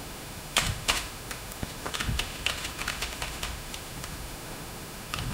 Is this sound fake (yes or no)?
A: yes